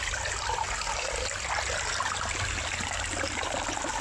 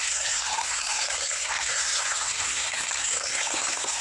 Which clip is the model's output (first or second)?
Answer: second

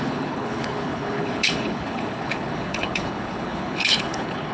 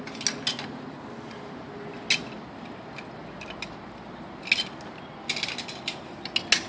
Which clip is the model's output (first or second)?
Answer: first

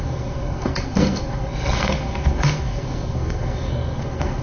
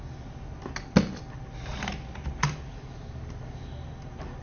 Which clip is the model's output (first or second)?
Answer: first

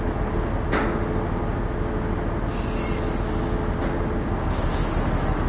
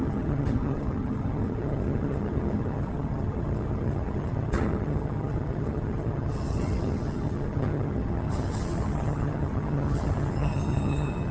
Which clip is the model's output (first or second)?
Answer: second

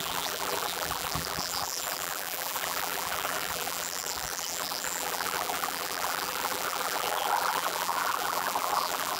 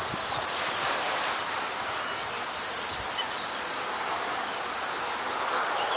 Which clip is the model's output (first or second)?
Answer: first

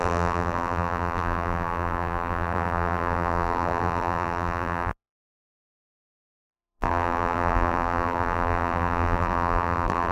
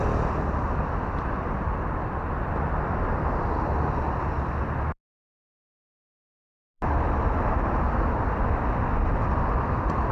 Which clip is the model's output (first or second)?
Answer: first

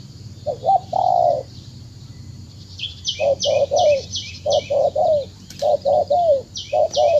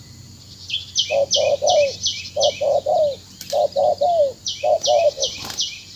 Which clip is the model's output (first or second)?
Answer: first